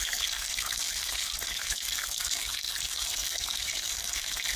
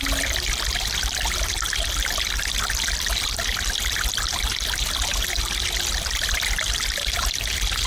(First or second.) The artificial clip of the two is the first